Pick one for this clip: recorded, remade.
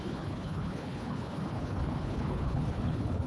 remade